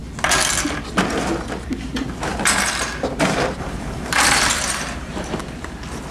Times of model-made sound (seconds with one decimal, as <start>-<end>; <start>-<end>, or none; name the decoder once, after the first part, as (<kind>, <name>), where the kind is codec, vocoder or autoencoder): 2.3-5.4 (vocoder, BigVGAN v2)